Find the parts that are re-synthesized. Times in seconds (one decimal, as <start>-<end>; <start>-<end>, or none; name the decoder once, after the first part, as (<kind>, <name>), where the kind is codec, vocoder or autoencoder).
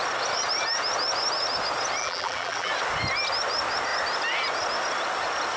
2.0-2.7 (vocoder, BigVGAN v2)